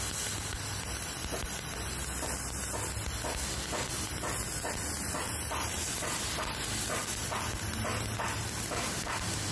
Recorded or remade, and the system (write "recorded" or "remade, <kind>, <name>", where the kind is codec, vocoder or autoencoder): recorded